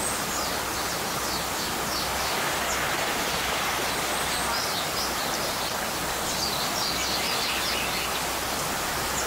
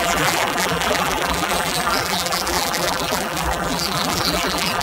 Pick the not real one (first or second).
second